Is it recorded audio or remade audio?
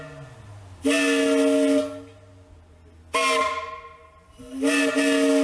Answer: recorded